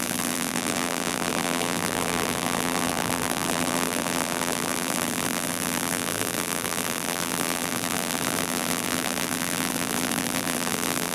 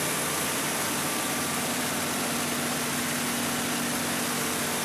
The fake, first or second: first